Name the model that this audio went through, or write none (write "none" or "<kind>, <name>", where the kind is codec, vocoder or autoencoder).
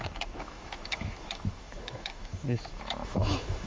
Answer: autoencoder, DAC-VAE